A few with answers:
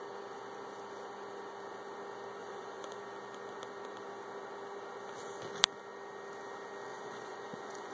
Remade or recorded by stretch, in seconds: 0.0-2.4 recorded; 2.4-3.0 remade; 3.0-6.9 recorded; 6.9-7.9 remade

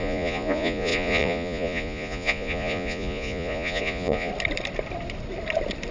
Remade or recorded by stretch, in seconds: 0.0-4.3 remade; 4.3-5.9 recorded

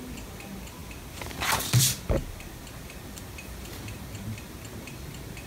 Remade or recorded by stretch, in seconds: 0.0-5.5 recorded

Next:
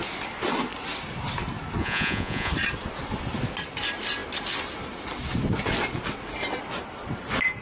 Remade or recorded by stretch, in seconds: 0.0-1.8 recorded; 1.8-2.5 remade; 2.5-7.6 recorded

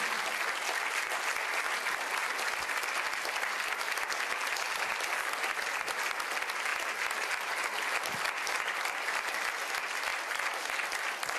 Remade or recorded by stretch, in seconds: 0.0-11.4 recorded

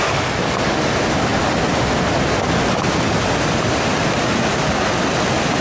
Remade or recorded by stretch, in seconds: 0.0-5.6 recorded

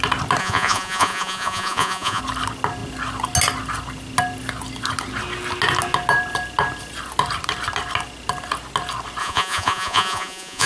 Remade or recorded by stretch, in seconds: 0.0-0.4 recorded; 0.4-2.2 remade; 2.2-9.2 recorded; 9.2-10.7 remade

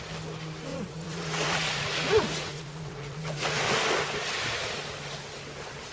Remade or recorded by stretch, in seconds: 0.0-0.7 recorded; 0.7-3.6 remade; 3.6-5.9 recorded